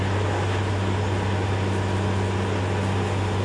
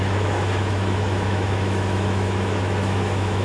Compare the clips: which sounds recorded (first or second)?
first